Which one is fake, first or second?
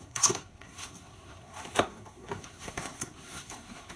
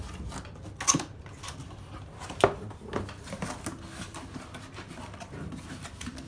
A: first